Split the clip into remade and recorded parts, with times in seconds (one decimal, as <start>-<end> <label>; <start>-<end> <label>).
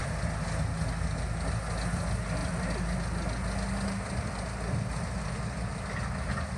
0.0-6.6 recorded